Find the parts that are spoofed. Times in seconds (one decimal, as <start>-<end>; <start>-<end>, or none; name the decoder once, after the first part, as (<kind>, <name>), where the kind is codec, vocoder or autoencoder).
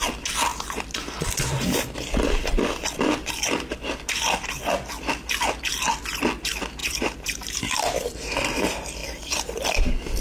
6.8-7.6 (vocoder, BigVGAN v2); 9.0-9.6